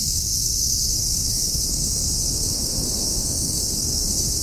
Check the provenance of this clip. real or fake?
fake